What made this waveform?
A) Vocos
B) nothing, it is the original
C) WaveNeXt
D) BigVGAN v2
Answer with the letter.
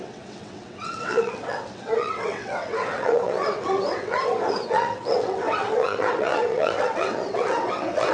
C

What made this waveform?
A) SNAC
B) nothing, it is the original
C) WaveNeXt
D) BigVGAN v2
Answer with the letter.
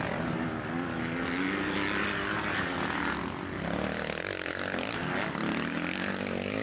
B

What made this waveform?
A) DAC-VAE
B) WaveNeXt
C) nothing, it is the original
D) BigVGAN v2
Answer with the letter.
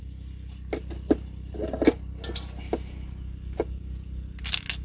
C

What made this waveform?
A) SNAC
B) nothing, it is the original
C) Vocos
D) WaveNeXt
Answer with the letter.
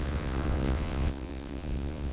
D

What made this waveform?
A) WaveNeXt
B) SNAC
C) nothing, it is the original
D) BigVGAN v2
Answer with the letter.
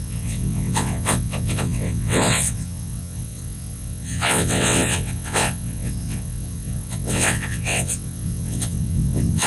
A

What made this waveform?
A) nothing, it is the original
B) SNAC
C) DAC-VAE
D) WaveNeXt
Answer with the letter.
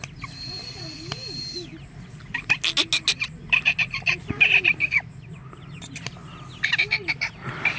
A